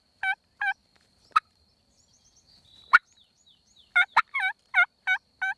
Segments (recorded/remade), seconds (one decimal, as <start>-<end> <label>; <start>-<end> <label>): 0.0-0.8 recorded; 0.8-3.9 remade; 3.9-5.6 recorded

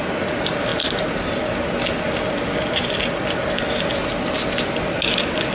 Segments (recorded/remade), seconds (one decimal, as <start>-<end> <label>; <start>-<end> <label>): 0.0-5.5 recorded

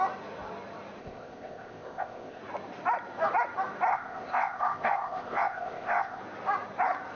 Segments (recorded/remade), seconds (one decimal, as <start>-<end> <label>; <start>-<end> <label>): 0.0-1.0 recorded; 1.0-2.4 remade; 2.4-3.9 recorded; 3.9-6.2 remade; 6.2-7.2 recorded

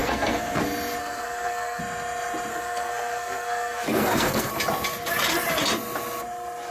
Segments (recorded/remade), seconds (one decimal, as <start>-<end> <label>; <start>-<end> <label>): 0.0-0.6 remade; 0.6-1.0 recorded; 1.0-1.8 remade; 1.8-2.5 recorded; 2.5-4.5 remade; 4.5-6.7 recorded

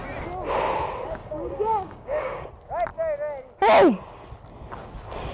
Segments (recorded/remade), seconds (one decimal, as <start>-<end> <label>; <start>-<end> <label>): 0.0-1.2 recorded; 1.2-2.5 remade; 2.5-5.3 recorded

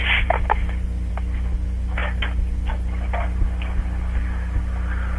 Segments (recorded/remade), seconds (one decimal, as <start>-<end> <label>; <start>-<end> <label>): 0.0-5.2 recorded

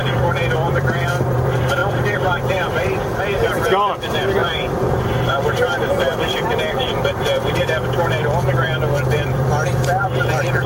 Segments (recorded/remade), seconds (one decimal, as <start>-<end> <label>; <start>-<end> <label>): 0.0-10.7 remade